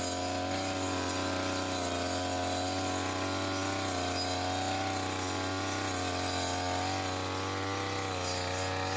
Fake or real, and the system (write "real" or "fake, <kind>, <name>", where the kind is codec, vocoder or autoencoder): real